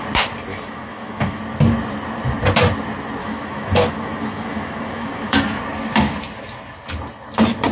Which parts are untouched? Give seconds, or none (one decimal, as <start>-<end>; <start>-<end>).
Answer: 0.0-0.5; 1.4-3.2; 5.6-7.7

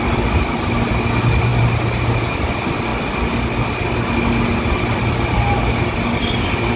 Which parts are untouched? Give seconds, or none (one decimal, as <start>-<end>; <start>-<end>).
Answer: 0.0-6.8

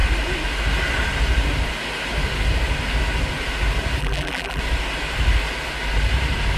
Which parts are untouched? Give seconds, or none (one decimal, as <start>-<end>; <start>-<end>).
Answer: 0.0-4.0; 4.6-6.6

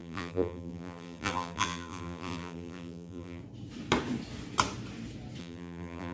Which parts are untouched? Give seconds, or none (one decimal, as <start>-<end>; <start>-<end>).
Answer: 3.4-5.4

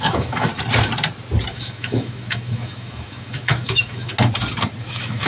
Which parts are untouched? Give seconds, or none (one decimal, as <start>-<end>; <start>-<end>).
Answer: 0.5-1.5; 4.1-4.8

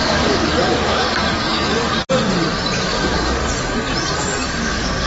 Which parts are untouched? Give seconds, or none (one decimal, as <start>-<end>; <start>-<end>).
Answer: 2.0-2.9; 3.4-4.2